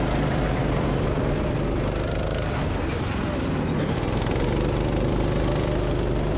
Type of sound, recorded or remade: recorded